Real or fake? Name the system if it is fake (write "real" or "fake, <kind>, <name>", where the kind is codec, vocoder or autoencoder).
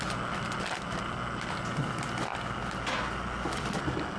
real